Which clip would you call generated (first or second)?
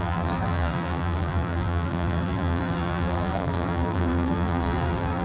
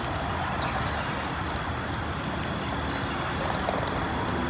first